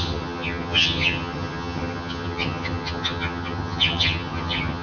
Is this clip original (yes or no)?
no